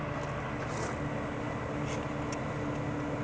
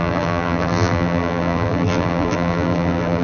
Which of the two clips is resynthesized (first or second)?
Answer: second